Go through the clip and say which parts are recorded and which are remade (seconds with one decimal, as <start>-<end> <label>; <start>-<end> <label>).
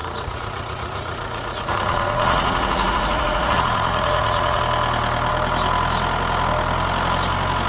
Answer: 0.0-4.6 remade; 4.6-7.7 recorded